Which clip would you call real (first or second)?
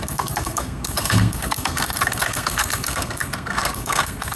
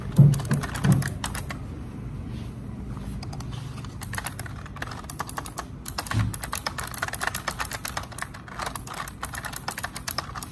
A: second